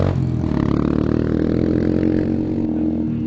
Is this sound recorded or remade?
recorded